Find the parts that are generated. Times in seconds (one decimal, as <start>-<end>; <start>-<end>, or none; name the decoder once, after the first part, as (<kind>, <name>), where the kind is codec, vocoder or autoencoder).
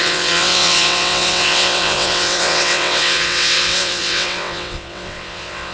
0.0-5.7 (vocoder, WaveNeXt)